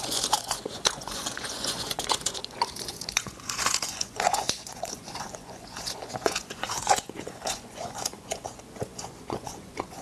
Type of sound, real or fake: fake